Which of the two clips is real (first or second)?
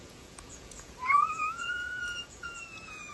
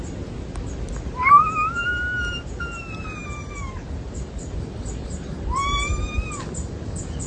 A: second